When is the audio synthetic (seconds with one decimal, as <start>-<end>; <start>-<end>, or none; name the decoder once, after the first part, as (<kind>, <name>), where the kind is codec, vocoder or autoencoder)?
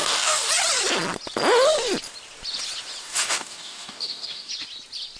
0.0-0.5 (codec, DAC); 3.0-4.5